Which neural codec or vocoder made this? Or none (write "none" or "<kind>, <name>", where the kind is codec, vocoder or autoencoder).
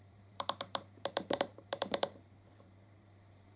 vocoder, BigVGAN v2